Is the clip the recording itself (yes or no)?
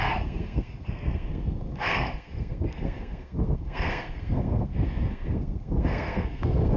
no